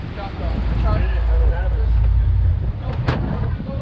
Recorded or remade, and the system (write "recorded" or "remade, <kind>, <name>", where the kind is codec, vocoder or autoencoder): recorded